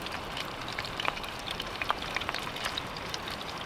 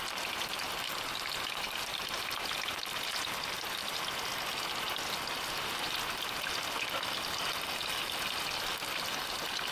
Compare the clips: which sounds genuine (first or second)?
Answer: second